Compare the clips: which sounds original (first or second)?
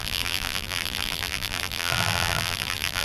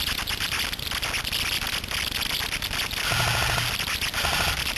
second